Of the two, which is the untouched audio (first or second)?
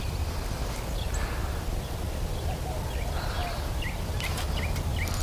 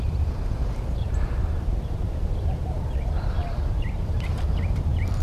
first